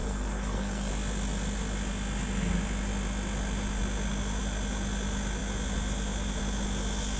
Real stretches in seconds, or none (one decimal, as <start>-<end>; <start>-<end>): 0.9-7.2